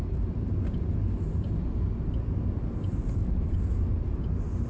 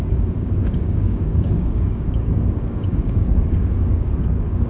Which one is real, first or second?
first